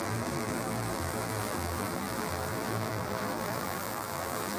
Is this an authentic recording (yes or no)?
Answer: no